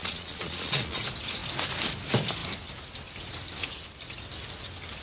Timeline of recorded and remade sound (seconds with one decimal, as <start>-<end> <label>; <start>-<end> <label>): 0.0-1.0 remade; 1.0-5.0 recorded